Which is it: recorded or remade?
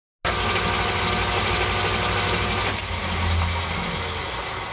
recorded